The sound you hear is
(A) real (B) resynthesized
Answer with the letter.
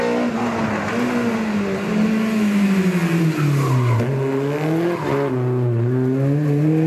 A